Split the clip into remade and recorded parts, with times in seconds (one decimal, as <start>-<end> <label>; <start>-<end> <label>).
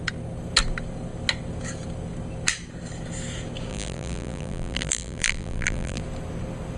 0.0-3.7 recorded; 3.7-6.0 remade; 6.0-6.8 recorded